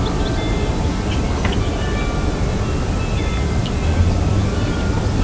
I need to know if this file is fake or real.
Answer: real